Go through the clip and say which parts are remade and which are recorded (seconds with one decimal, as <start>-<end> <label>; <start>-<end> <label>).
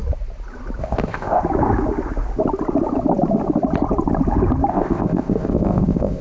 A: 0.0-0.8 recorded; 0.8-1.4 remade; 1.4-4.7 recorded; 4.7-6.2 remade